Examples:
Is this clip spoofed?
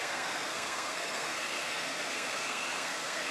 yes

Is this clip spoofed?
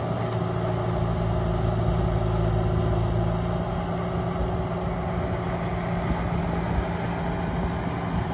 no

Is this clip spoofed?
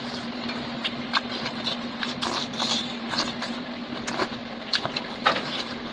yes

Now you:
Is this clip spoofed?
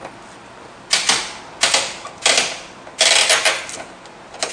no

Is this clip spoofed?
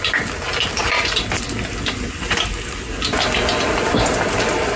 no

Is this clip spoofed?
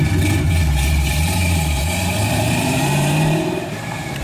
yes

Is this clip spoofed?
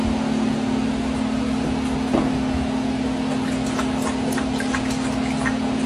no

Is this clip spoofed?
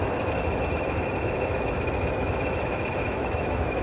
yes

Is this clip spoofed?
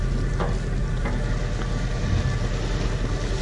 no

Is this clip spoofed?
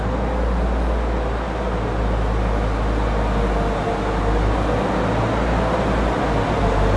no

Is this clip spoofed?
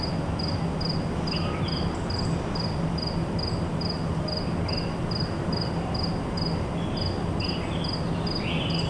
no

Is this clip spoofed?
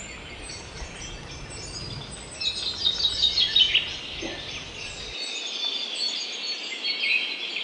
no